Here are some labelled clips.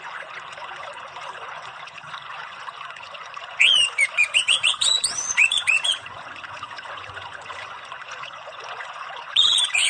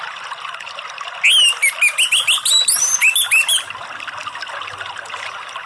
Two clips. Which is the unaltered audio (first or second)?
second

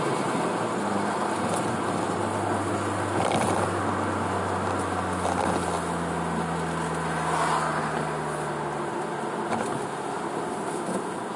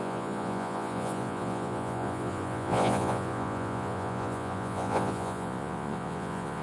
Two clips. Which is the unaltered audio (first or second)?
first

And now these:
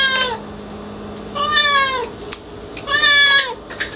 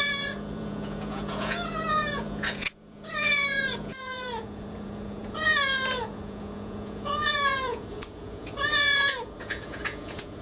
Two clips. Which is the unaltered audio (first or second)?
first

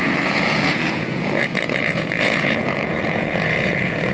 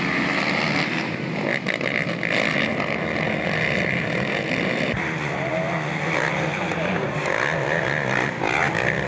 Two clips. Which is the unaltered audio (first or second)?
second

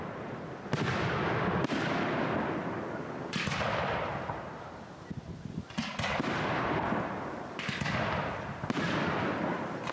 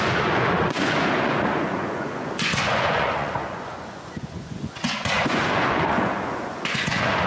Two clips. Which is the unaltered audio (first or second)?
first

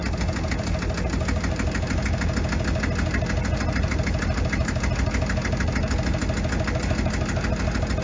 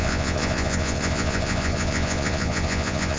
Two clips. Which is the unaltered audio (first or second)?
first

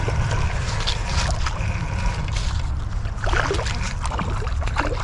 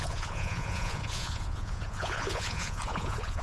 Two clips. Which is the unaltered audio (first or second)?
first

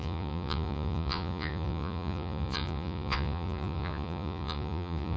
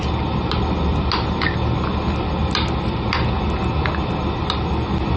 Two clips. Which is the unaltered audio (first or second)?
second